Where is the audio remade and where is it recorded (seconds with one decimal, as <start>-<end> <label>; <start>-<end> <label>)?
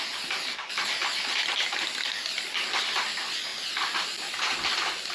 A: 0.0-3.5 recorded; 3.5-4.4 remade; 4.4-5.1 recorded